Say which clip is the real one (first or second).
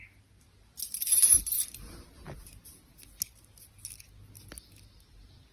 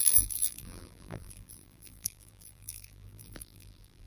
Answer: first